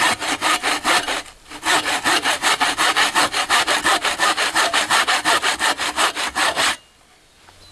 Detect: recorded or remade recorded